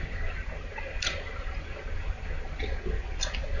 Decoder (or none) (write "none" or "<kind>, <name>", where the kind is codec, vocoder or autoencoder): none